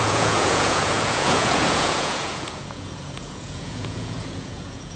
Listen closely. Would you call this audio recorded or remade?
remade